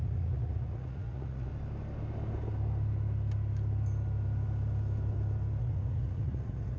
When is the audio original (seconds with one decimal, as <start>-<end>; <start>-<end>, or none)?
1.5-5.6